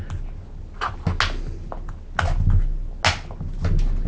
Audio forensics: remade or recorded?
recorded